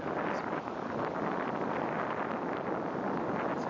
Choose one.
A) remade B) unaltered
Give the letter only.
B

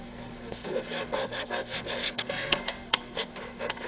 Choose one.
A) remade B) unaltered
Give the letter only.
A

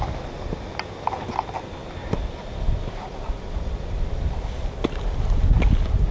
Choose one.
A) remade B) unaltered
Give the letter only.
B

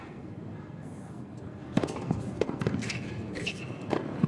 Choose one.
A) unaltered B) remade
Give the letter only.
B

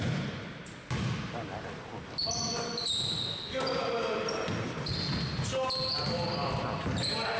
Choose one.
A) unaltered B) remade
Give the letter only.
A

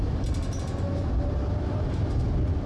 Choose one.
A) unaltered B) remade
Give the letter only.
A